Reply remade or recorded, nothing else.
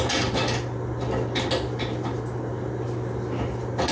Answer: recorded